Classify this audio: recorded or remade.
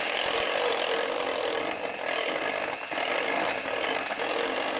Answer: recorded